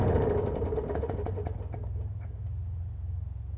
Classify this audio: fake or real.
real